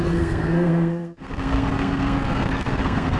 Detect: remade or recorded remade